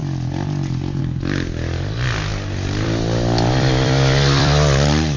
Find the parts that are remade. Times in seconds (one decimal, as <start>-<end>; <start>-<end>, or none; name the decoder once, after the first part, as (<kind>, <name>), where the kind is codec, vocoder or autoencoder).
2.3-5.2 (vocoder, BigVGAN v2)